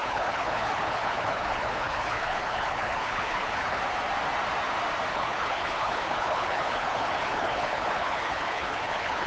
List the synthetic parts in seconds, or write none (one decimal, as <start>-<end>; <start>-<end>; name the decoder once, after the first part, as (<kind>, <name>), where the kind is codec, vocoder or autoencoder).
0.0-3.8 (codec, HILCodec); 5.1-9.3